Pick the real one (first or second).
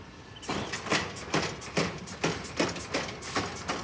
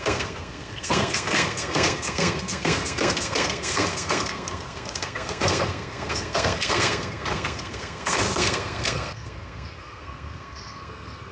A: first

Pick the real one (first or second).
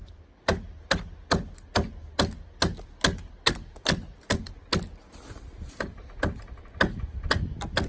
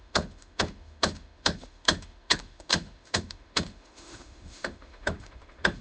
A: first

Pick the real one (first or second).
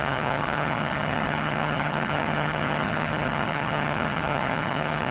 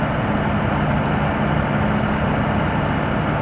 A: second